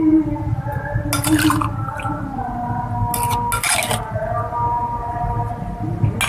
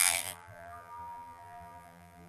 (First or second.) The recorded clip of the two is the first